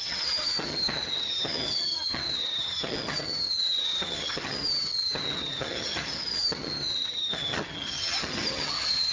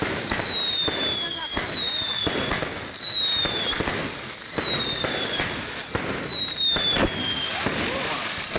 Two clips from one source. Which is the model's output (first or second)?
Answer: first